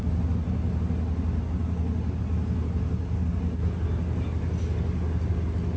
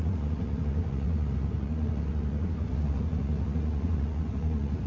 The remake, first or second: second